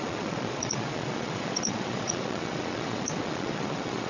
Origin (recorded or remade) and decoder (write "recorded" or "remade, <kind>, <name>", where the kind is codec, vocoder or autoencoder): remade, vocoder, Vocos